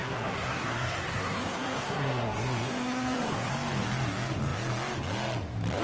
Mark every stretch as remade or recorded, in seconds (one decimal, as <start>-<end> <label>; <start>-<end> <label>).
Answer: 0.0-3.5 remade; 3.5-5.8 recorded